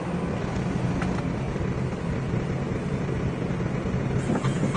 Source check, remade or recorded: recorded